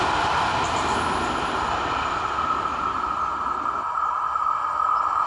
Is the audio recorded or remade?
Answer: recorded